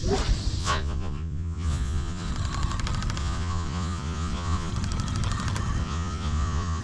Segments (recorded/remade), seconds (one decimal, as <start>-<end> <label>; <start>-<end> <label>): 0.0-0.6 recorded; 0.6-2.3 remade; 2.3-3.2 recorded; 3.2-4.7 remade; 4.7-5.8 recorded; 5.8-6.8 remade

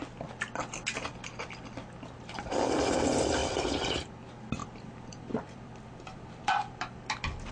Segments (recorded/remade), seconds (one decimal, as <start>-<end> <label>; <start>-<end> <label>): 0.0-3.4 recorded; 3.4-4.1 remade; 4.1-4.6 recorded; 4.6-6.8 remade; 6.8-7.5 recorded

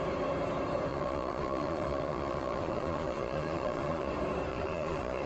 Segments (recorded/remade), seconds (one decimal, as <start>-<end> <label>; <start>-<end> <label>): 0.0-0.9 recorded; 0.9-4.1 remade; 4.1-4.5 recorded; 4.5-5.3 remade